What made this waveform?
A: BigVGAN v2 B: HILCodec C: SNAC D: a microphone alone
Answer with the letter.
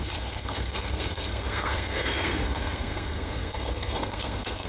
C